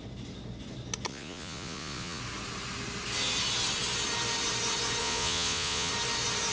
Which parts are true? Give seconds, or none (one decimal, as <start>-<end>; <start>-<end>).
0.0-1.1; 2.2-5.0; 5.9-6.5